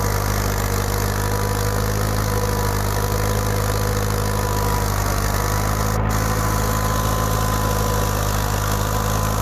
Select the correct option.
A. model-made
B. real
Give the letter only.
B